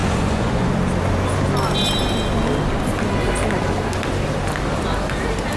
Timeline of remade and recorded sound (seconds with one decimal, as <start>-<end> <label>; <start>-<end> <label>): 0.0-0.7 remade; 0.7-5.6 recorded